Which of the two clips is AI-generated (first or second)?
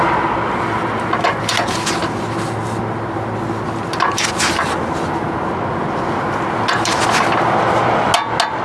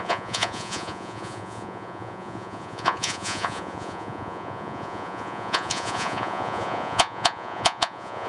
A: second